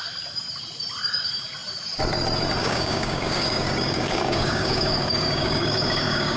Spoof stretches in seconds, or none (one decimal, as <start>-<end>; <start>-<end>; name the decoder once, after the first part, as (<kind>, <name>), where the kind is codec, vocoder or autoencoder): 2.6-6.4 (codec, DAC)